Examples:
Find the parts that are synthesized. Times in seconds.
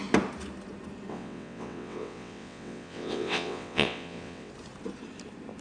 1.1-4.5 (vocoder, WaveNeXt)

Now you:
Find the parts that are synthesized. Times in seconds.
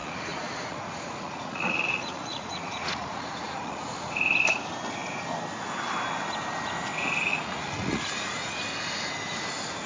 0.0-4.1 (vocoder, Vocos); 7.3-8.5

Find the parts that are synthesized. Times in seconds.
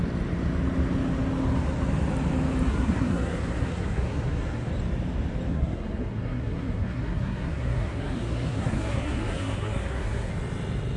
2.7-4.7 (codec, SNAC); 5.5-10.3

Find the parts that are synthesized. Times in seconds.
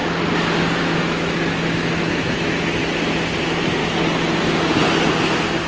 0.8-2.8 (autoencoder, DAC-VAE); 3.4-3.8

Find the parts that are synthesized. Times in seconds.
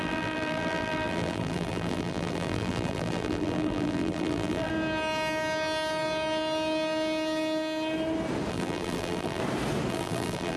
0.0-4.7 (vocoder, BigVGAN v2); 8.5-9.4; 9.9-10.6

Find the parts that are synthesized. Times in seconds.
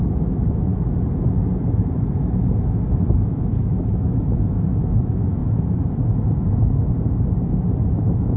0.0-0.7 (autoencoder, DAC-VAE); 2.9-5.4; 8.0-8.4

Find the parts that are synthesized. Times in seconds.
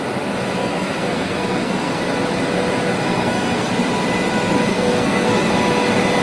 0.6-2.0 (codec, SNAC); 3.0-3.7; 4.7-5.5